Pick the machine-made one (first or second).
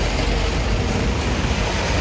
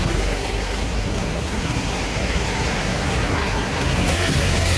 second